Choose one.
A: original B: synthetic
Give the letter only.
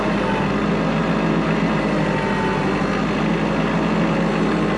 A